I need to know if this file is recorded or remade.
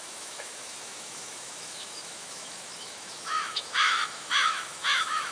remade